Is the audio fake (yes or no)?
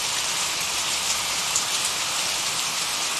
no